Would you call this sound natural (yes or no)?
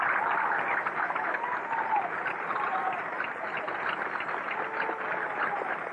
yes